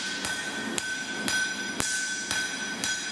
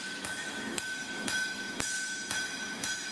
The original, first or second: first